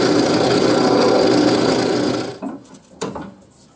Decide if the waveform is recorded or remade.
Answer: recorded